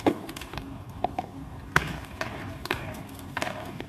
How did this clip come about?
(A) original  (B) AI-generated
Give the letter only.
B